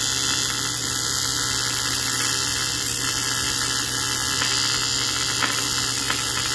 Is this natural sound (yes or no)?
yes